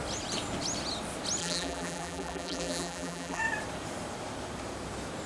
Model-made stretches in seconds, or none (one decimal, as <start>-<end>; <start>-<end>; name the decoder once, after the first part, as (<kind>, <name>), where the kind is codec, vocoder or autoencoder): 1.4-3.4 (vocoder, BigVGAN v2)